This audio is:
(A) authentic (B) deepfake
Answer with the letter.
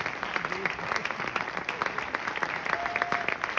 A